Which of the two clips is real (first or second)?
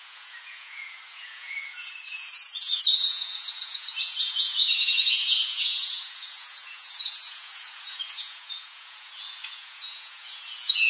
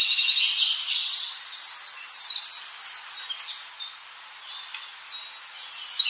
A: second